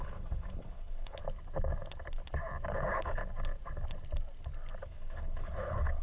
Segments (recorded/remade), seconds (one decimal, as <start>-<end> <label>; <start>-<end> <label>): 0.0-1.2 remade; 1.2-2.7 recorded; 2.7-3.2 remade; 3.2-4.8 recorded; 4.8-6.0 remade